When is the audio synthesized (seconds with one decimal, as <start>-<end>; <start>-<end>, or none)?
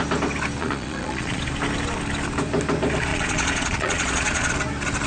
0.6-1.4; 3.1-4.5